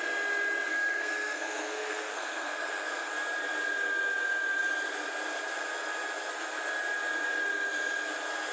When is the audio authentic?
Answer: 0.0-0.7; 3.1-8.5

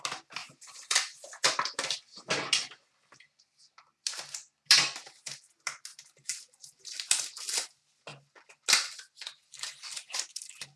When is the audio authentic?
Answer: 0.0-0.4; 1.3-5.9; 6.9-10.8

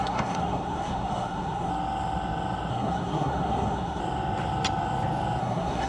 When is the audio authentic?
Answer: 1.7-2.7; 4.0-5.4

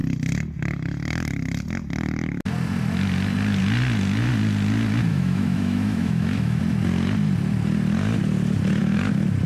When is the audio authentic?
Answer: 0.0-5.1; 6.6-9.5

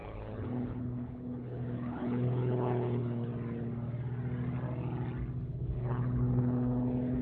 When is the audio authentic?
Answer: 3.3-5.5